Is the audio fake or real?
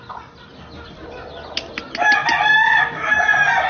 real